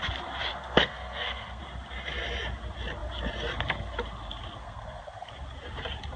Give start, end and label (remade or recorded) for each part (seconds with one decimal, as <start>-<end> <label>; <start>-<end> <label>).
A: 0.0-0.5 recorded; 0.5-1.6 remade; 1.6-4.6 recorded; 4.6-5.3 remade; 5.3-6.2 recorded